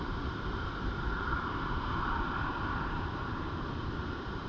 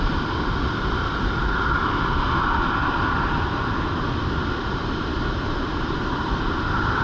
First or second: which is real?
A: second